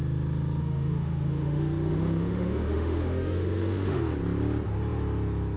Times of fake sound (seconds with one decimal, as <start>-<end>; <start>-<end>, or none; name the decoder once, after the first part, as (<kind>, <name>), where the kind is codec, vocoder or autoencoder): 0.6-4.0 (autoencoder, DAC-VAE)